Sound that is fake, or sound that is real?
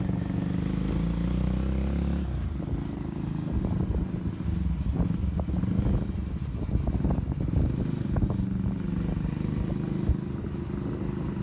real